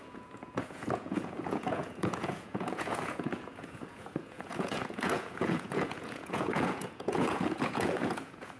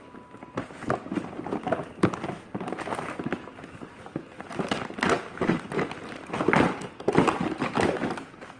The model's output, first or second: first